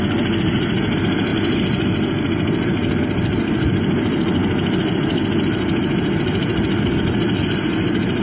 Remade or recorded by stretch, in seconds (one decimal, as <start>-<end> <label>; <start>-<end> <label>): 0.0-8.2 recorded